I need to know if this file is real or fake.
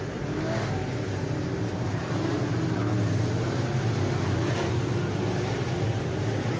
real